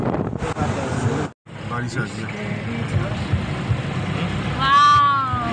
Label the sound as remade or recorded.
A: recorded